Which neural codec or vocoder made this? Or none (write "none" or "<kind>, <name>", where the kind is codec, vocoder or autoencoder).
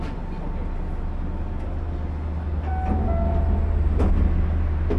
none